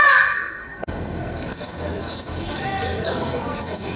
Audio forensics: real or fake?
fake